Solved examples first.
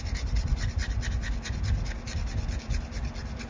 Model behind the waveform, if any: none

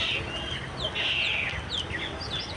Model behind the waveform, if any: none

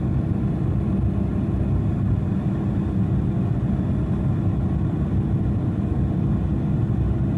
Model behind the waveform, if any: none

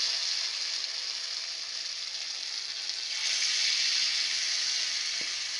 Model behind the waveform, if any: none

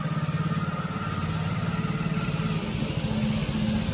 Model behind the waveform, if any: none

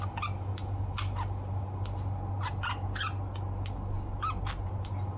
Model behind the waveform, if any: none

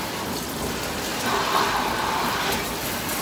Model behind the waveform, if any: none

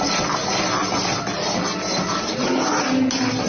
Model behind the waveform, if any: none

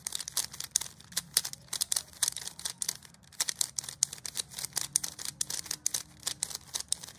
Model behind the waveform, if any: none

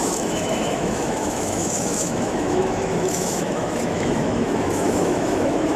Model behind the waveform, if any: autoencoder, DAC-VAE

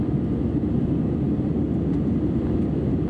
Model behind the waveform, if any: none